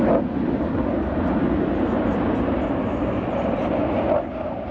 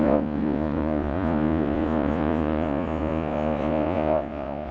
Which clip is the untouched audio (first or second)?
first